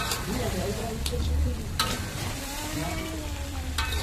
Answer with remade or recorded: remade